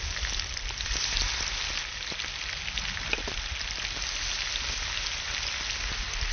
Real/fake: real